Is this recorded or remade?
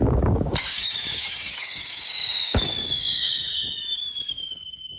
remade